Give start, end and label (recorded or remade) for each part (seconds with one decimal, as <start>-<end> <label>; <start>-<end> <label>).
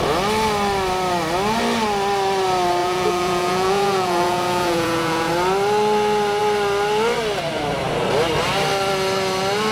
0.0-2.8 recorded; 2.8-5.3 remade; 5.3-9.7 recorded